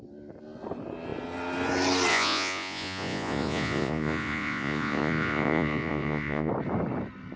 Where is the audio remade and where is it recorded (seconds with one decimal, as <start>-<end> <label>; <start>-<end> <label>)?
0.0-2.1 recorded; 2.1-6.5 remade; 6.5-7.4 recorded